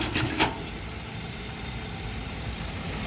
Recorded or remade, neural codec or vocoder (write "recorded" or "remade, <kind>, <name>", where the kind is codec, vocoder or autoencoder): remade, vocoder, BigVGAN v2